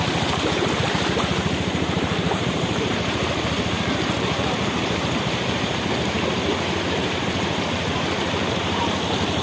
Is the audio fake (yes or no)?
yes